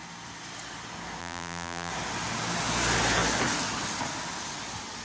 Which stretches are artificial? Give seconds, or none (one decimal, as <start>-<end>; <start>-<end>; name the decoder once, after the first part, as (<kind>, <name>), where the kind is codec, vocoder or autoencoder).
1.2-1.9 (vocoder, BigVGAN v2)